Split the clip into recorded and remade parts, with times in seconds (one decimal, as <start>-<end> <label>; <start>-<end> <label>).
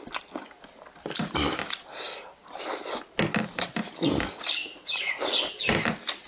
0.0-4.6 recorded; 4.6-5.2 remade; 5.2-6.3 recorded